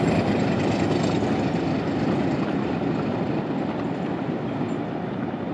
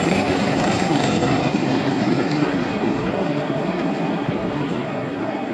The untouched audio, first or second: first